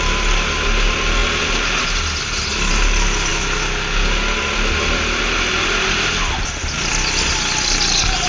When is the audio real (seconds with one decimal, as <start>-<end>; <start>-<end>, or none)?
0.0-8.3